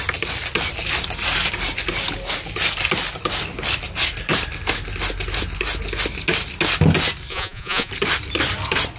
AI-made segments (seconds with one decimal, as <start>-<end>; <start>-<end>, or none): 7.3-7.9